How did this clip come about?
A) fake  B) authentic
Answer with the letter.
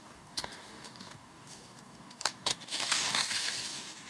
A